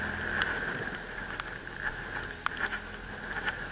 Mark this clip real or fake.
real